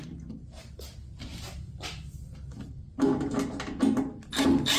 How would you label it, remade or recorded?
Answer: recorded